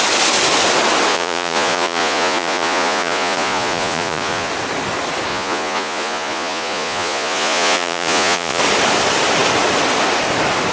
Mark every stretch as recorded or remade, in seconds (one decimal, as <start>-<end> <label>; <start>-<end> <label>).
0.0-1.1 recorded; 1.1-4.5 remade; 4.5-5.3 recorded; 5.3-8.6 remade; 8.6-10.7 recorded